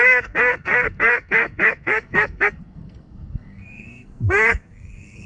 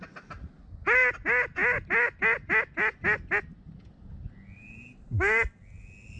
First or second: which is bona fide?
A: second